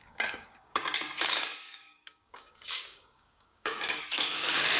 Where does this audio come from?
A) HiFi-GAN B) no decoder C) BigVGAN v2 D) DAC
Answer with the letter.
D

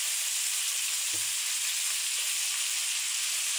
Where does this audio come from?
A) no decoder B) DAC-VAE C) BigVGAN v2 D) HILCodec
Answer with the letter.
A